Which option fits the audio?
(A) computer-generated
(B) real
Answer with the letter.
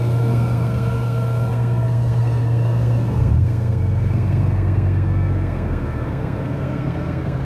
A